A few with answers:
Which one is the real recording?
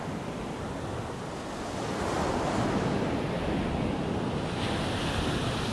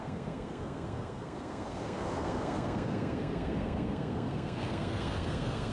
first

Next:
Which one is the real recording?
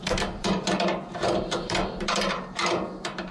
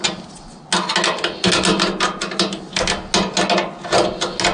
second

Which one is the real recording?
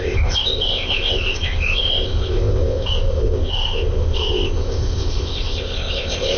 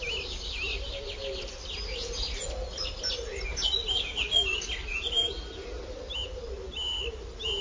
second